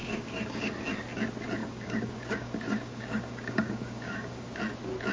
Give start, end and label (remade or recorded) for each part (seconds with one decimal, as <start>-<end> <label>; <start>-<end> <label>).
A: 0.0-0.7 remade; 0.7-1.6 recorded; 1.6-4.6 remade; 4.6-5.1 recorded

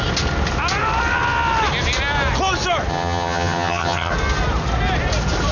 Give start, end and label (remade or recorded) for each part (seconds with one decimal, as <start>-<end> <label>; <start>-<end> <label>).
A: 0.0-2.9 recorded; 2.9-4.1 remade; 4.1-5.5 recorded